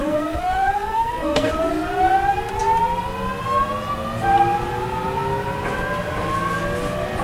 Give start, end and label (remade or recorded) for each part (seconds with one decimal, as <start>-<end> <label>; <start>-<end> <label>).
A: 0.0-1.7 remade; 1.7-7.2 recorded